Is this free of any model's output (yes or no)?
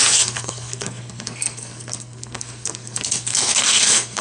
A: no